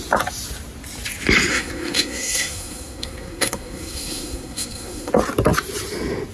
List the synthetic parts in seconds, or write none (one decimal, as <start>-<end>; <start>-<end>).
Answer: 1.5-5.1